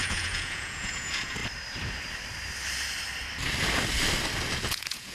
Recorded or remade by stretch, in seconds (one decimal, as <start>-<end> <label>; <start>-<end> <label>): 0.0-1.4 remade; 1.4-4.5 recorded; 4.5-5.1 remade